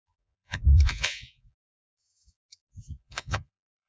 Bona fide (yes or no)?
no